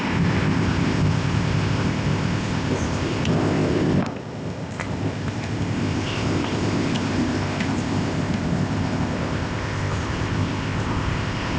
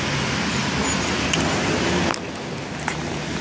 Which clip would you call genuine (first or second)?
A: second